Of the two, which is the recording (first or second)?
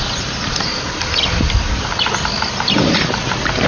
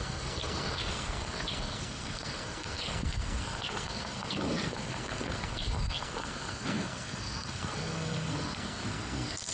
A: first